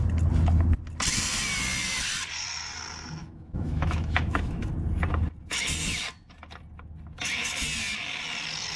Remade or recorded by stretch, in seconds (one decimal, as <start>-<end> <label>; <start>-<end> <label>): 0.0-3.2 recorded; 3.2-4.7 remade; 4.7-8.8 recorded